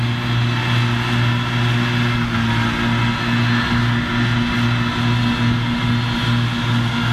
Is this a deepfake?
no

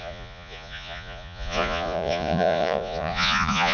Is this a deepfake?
yes